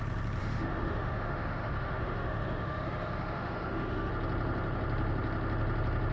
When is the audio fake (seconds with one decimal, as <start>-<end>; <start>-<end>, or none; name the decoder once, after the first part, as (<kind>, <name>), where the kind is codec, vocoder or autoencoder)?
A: 0.4-4.1 (autoencoder, DAC-VAE)

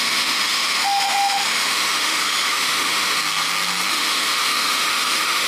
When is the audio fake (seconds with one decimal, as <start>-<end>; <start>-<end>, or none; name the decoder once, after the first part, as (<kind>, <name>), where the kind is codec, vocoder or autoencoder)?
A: 0.0-3.2 (autoencoder, DAC-VAE); 3.9-5.5

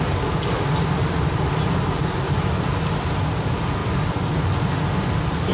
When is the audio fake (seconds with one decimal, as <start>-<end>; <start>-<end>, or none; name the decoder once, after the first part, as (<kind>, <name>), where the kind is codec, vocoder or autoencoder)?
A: none

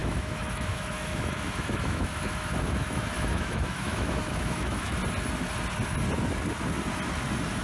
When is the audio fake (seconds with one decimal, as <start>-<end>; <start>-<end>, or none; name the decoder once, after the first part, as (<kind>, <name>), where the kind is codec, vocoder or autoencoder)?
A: 0.0-5.0 (autoencoder, DAC-VAE)

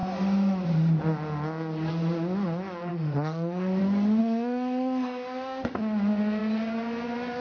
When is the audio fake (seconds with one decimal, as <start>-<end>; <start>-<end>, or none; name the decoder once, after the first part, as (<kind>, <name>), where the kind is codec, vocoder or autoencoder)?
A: 2.9-3.8 (autoencoder, DAC-VAE); 4.2-5.7

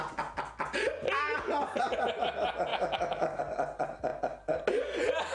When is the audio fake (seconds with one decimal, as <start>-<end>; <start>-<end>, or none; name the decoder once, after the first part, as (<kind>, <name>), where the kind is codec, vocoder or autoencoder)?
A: 2.7-3.4 (autoencoder, DAC-VAE)

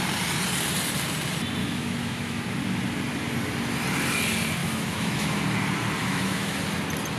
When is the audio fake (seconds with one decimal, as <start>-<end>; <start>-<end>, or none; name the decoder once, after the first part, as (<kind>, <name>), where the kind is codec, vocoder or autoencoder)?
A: 1.6-2.4 (autoencoder, DAC-VAE); 4.6-5.4; 6.0-6.6

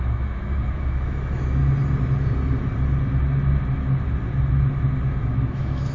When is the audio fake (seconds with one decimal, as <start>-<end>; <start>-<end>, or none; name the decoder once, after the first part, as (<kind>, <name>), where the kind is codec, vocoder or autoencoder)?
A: 0.0-1.6 (autoencoder, DAC-VAE); 5.1-5.9